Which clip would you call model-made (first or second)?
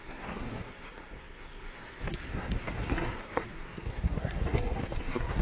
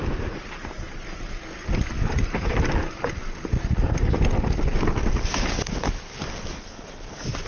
first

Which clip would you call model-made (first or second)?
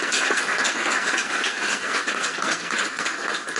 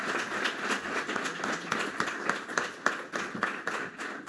first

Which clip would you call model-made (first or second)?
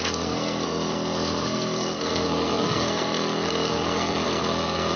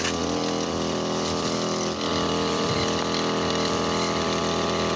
first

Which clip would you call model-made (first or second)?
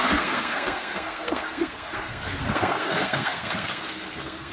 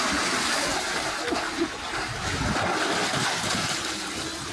first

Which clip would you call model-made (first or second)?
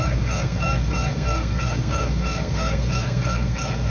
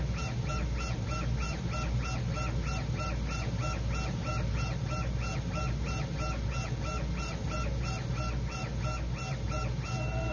first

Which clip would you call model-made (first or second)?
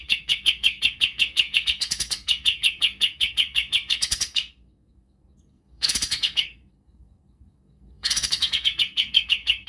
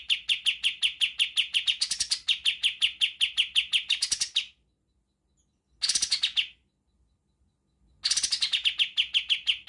first